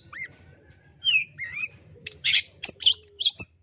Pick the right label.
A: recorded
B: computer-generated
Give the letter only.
B